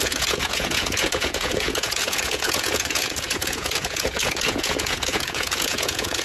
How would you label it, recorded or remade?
remade